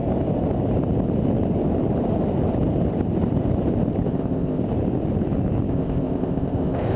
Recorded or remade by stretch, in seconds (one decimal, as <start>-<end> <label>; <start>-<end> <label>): 0.0-4.1 recorded; 4.1-4.6 remade; 4.6-5.7 recorded; 5.7-7.0 remade